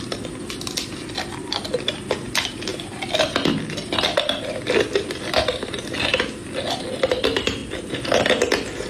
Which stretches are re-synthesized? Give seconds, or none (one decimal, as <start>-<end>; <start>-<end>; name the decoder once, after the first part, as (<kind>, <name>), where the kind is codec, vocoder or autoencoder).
0.0-6.1 (vocoder, BigVGAN v2); 6.8-7.6